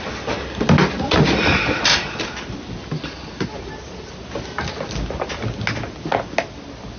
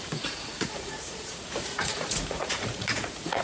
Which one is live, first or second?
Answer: first